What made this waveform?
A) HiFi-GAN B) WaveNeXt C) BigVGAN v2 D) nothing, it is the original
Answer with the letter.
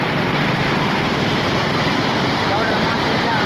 C